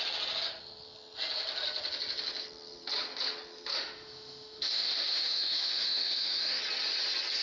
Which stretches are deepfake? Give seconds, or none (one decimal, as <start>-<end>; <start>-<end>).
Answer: 3.7-6.6

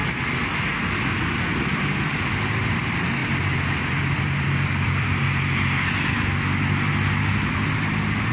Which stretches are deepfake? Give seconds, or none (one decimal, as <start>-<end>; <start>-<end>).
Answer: none

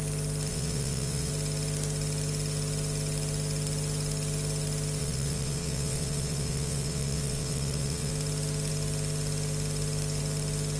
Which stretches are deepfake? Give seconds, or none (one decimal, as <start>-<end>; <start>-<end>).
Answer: 0.5-1.3; 5.0-8.1